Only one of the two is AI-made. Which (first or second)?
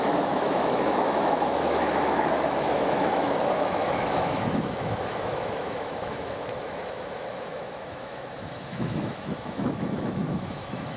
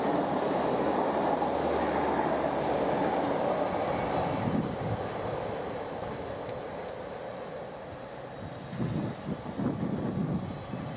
first